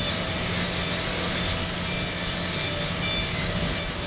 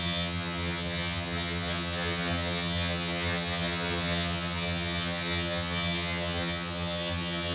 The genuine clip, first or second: first